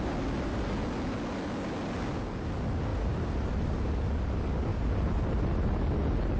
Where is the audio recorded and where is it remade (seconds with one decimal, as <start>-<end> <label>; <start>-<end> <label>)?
0.0-2.9 recorded; 2.9-3.9 remade; 3.9-4.7 recorded; 4.7-5.8 remade; 5.8-6.4 recorded